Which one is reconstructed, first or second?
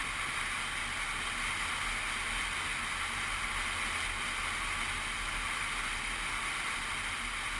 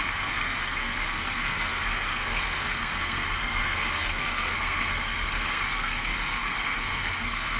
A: second